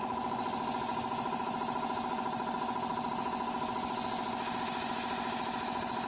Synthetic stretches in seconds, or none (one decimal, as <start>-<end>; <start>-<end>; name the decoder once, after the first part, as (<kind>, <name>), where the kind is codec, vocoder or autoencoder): none